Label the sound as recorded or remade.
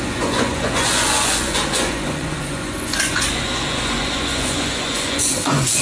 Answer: remade